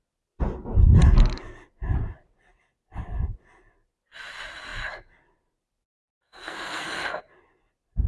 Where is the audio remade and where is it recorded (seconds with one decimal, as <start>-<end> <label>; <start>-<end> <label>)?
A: 0.0-5.9 recorded; 5.9-7.2 remade; 7.2-8.1 recorded

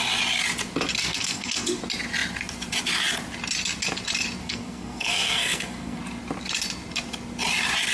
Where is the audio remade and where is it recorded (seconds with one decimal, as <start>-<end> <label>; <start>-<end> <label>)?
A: 0.0-1.0 recorded; 1.0-1.8 remade; 1.8-4.4 recorded; 4.4-6.0 remade; 6.0-7.9 recorded

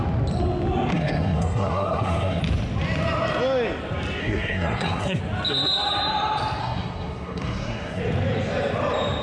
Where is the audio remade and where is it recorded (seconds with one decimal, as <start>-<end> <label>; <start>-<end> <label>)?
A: 0.0-0.9 recorded; 0.9-2.4 remade; 2.4-4.2 recorded; 4.2-5.2 remade; 5.2-6.6 recorded; 6.6-8.0 remade; 8.0-9.2 recorded

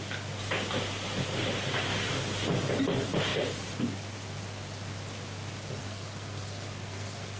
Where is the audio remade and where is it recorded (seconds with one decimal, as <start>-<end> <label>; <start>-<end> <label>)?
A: 0.0-5.8 recorded; 5.8-7.4 remade

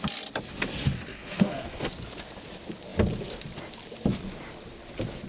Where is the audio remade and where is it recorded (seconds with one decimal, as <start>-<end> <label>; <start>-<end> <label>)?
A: 0.0-1.1 recorded; 1.1-1.9 remade; 1.9-5.3 recorded

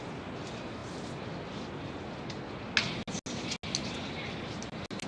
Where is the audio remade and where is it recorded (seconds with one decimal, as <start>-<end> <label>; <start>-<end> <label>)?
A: 0.0-5.1 recorded